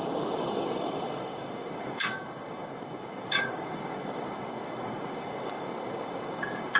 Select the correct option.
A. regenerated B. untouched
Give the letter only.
A